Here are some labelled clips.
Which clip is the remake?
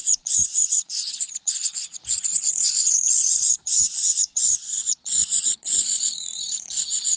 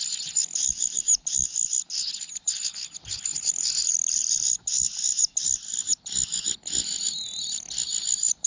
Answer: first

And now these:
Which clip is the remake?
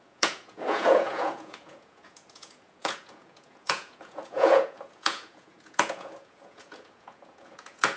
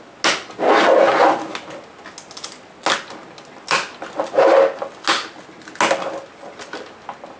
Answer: first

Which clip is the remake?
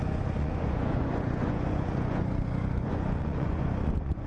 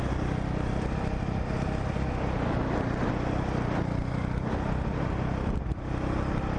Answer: first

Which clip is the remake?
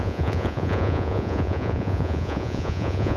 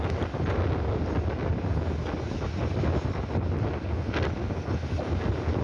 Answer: first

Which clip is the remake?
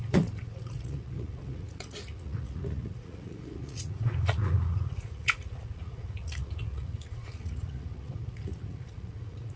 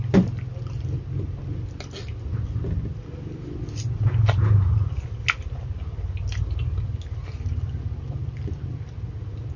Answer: first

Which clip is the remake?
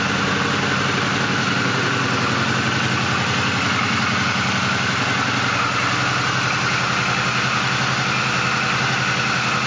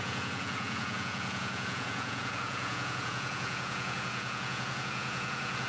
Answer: second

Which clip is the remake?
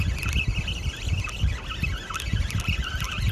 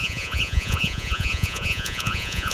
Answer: second